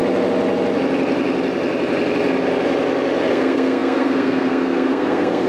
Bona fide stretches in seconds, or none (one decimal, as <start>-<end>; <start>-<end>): 0.0-3.3